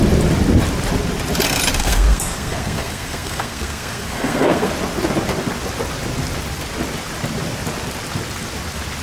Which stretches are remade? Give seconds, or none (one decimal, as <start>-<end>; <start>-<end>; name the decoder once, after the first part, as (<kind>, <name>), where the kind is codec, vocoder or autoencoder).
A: 1.8-4.7 (codec, SNAC)